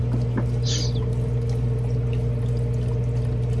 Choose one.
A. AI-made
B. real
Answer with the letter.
B